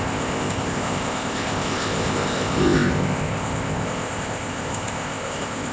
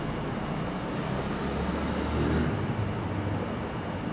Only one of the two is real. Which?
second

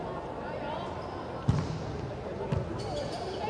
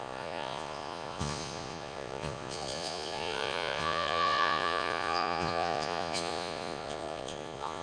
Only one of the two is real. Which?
first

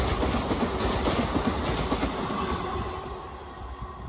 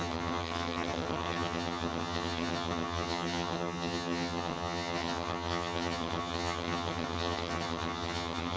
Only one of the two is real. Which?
first